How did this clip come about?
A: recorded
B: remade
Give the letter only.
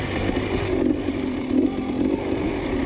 A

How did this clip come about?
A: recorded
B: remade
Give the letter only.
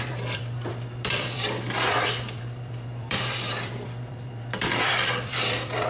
B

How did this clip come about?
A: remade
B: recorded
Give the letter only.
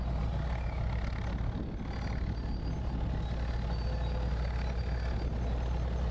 B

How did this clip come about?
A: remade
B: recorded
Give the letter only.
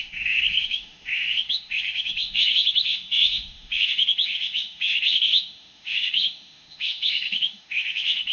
A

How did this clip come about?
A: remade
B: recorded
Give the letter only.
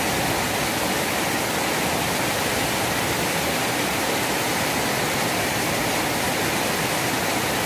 B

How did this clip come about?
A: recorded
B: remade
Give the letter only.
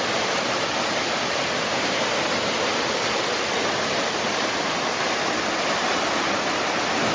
A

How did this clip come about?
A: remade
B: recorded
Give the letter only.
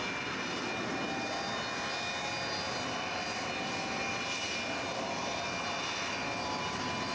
B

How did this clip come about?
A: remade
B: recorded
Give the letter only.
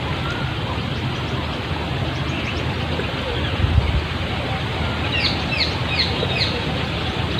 B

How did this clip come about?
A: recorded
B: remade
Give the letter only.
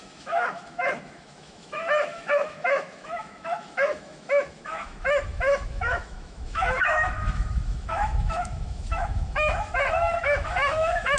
B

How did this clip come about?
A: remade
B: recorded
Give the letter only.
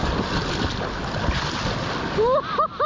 B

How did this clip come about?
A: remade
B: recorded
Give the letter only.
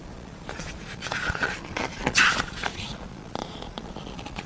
A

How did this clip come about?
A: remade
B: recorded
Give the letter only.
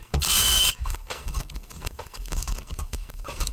A